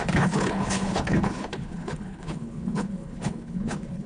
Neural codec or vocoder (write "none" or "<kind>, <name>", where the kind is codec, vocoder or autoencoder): codec, HILCodec